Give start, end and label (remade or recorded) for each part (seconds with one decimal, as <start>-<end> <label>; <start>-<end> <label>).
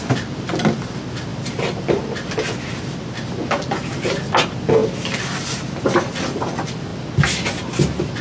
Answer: 0.0-8.2 recorded